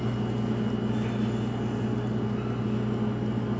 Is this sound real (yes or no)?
yes